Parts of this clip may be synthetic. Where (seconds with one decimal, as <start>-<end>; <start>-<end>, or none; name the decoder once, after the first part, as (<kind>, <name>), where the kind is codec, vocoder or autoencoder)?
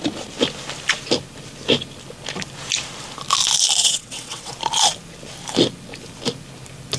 3.8-4.5 (vocoder, WaveNeXt)